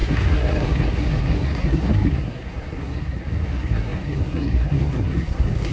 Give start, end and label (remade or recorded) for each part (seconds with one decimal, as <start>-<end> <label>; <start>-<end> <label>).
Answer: 0.0-5.7 remade